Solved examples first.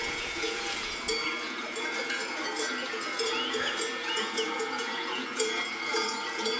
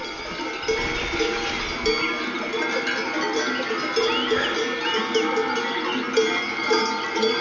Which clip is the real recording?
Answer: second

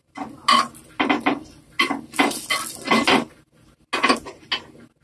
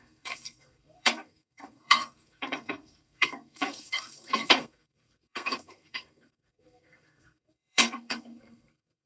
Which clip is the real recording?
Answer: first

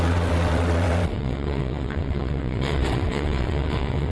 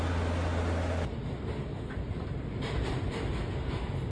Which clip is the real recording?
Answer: second